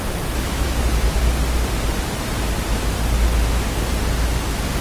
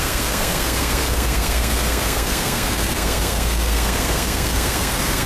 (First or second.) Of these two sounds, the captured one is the first